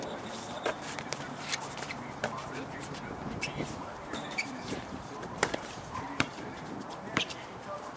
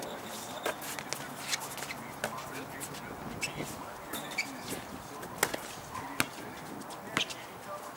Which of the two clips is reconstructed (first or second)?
first